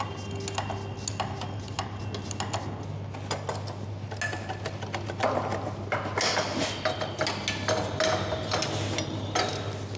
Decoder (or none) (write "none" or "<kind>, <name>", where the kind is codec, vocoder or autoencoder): none